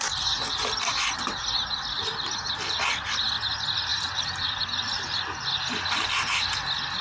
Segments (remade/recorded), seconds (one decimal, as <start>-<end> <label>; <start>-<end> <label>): 0.0-7.0 recorded